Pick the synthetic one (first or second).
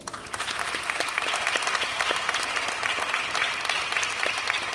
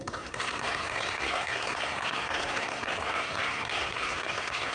second